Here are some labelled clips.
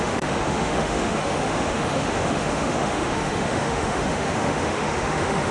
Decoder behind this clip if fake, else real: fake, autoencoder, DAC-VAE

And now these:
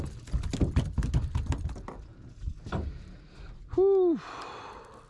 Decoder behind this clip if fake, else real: real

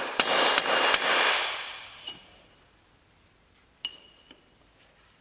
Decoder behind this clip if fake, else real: fake, vocoder, BigVGAN v2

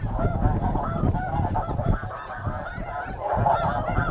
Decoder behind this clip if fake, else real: real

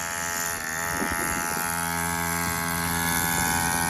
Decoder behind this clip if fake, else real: real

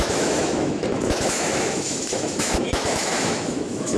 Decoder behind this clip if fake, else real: fake, autoencoder, DAC-VAE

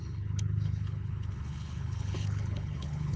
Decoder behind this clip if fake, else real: fake, codec, HILCodec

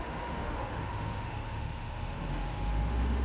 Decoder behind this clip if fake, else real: fake, autoencoder, DAC-VAE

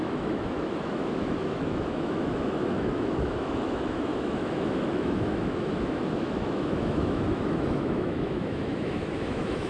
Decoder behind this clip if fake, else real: fake, autoencoder, DAC-VAE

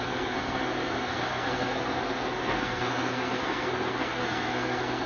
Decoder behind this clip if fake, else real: fake, codec, SNAC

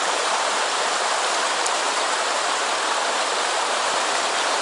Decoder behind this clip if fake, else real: fake, vocoder, BigVGAN v2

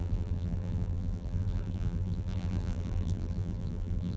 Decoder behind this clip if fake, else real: fake, vocoder, BigVGAN v2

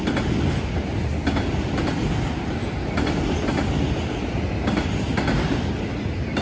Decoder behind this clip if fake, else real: real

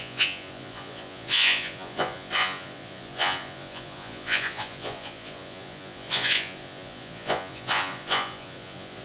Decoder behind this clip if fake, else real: fake, vocoder, Vocos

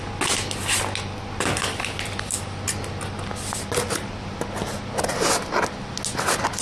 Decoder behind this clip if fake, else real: real